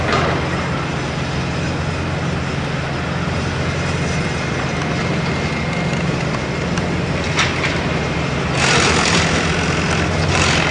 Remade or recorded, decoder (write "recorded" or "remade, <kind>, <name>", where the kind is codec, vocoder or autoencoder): recorded